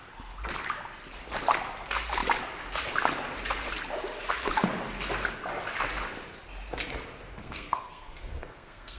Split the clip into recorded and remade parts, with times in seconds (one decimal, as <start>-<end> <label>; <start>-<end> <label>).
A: 0.0-7.4 recorded; 7.4-9.0 remade